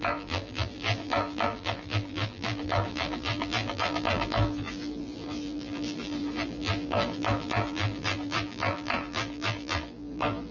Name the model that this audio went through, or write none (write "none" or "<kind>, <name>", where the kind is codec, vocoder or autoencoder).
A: vocoder, BigVGAN v2